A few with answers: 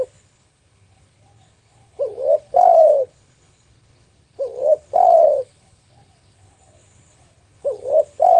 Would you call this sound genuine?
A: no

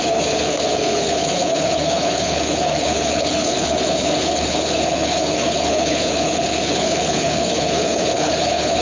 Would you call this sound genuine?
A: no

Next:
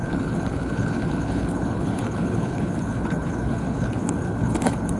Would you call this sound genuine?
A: no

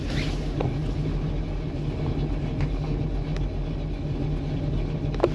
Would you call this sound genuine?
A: yes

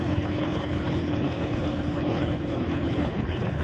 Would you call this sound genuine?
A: no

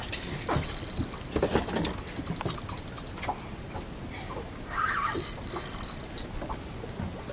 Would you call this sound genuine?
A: yes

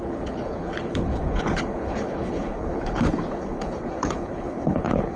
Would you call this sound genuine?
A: no